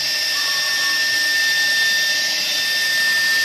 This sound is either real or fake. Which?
real